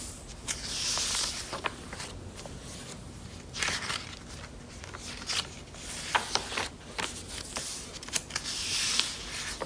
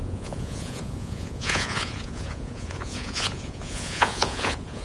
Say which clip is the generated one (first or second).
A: second